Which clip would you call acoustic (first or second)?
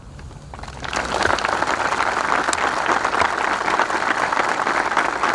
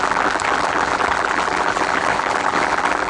first